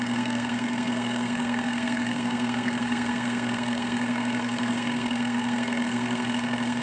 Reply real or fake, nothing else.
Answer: fake